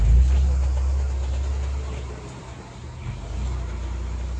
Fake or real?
real